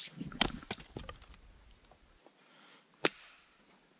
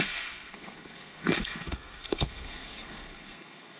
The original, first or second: first